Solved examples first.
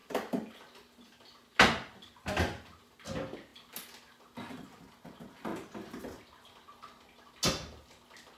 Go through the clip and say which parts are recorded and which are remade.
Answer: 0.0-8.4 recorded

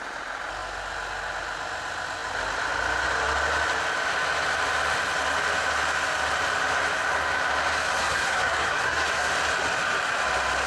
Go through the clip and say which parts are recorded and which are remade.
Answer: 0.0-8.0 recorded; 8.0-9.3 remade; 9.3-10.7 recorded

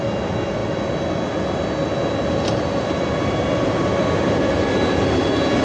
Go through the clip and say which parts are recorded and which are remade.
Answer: 0.0-5.6 recorded

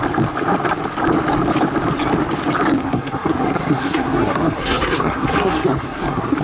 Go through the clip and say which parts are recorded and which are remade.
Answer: 0.0-2.8 recorded; 2.8-6.4 remade